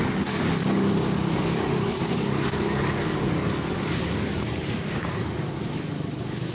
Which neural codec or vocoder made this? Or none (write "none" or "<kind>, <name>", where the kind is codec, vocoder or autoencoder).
codec, DAC